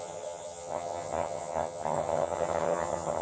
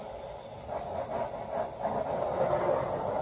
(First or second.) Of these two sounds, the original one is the second